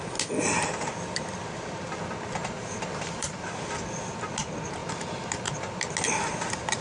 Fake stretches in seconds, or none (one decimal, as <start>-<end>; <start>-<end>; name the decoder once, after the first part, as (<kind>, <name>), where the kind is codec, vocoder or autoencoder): 2.4-3.5 (vocoder, BigVGAN v2); 4.8-5.9